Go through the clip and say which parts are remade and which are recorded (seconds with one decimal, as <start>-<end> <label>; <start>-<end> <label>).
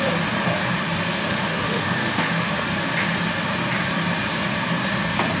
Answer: 0.0-1.2 recorded; 1.2-2.6 remade; 2.6-5.4 recorded